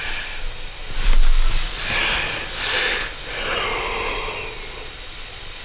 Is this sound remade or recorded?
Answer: recorded